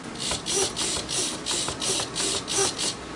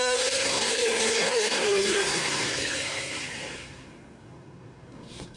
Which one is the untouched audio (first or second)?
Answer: first